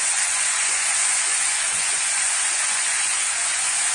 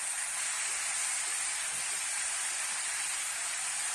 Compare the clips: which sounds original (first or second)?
second